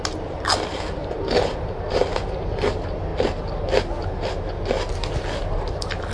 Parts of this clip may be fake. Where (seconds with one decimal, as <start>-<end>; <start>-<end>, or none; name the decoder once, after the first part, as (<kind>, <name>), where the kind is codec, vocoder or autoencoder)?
1.0-2.7 (vocoder, BigVGAN v2)